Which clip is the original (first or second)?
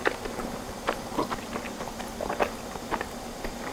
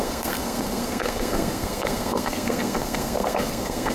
first